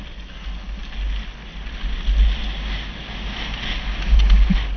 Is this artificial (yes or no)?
no